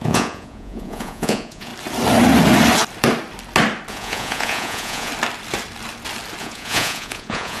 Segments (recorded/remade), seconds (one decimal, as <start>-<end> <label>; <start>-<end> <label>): 0.0-1.7 remade; 1.7-3.9 recorded; 3.9-5.1 remade; 5.1-6.4 recorded; 6.4-7.6 remade